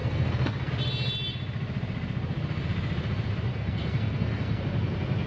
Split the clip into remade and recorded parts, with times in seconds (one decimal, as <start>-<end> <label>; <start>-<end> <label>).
0.0-0.7 remade; 0.7-3.5 recorded; 3.5-4.6 remade; 4.6-5.3 recorded